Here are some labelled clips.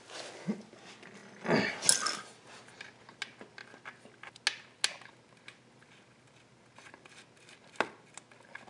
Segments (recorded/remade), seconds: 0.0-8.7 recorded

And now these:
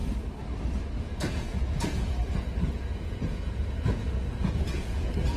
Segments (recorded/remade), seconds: 0.0-1.0 recorded; 1.0-5.4 remade

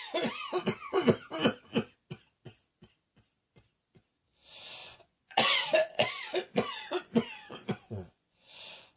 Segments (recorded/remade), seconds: 0.0-4.8 recorded; 4.8-9.0 remade

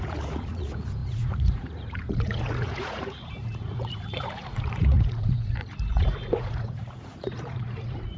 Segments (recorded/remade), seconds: 0.0-8.2 remade

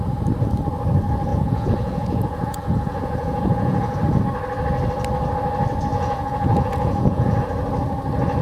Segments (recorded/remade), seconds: 0.0-1.3 recorded; 1.3-4.2 remade; 4.2-5.9 recorded; 5.9-7.4 remade; 7.4-8.4 recorded